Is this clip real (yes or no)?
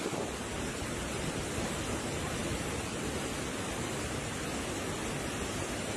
yes